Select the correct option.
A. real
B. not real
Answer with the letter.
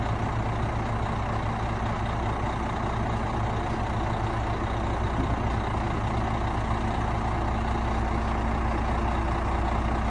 A